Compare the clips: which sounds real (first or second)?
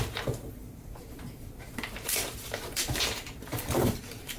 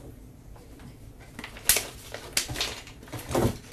second